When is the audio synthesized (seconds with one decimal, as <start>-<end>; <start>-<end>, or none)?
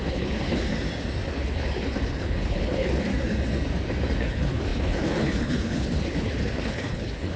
0.0-0.6; 1.3-3.1; 4.2-7.4